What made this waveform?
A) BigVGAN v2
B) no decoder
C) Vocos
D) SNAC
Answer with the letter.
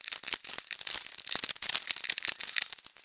B